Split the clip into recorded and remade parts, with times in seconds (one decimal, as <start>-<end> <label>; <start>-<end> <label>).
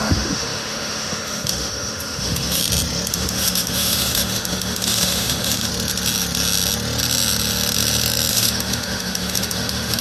0.0-2.6 remade; 2.6-3.1 recorded; 3.1-5.7 remade; 5.7-8.3 recorded; 8.3-10.0 remade